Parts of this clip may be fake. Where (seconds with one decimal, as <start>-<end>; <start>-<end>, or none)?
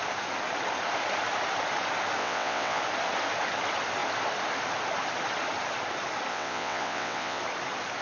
2.2-2.8; 6.3-7.4